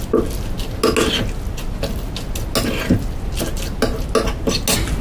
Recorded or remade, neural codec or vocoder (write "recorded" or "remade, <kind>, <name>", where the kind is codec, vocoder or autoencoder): recorded